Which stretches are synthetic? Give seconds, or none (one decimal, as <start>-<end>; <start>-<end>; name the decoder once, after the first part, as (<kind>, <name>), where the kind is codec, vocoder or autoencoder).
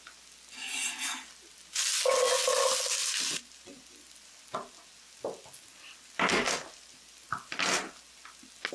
none